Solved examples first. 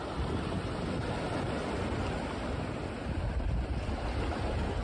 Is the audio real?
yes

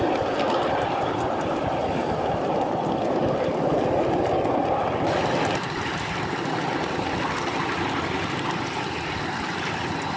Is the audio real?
yes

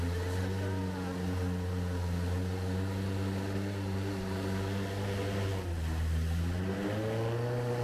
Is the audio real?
yes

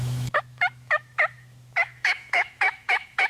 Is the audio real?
no